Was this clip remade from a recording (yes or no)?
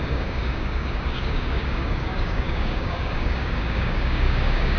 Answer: yes